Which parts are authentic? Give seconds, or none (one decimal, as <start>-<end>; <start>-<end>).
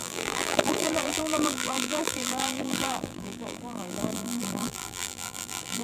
none